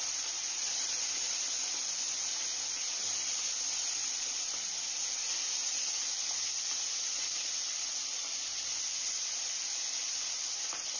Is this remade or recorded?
recorded